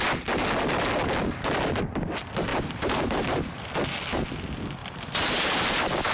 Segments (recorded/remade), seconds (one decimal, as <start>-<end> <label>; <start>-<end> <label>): 0.0-2.5 recorded; 2.5-3.7 remade; 3.7-4.8 recorded; 4.8-6.1 remade